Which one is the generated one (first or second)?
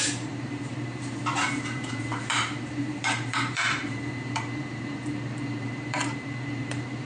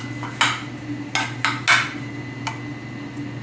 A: first